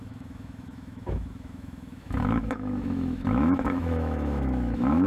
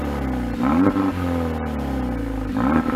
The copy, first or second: first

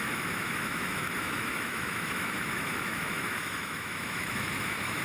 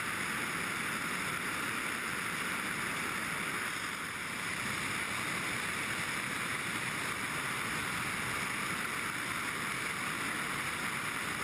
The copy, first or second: first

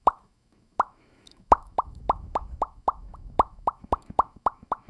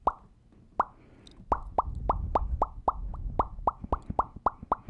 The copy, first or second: first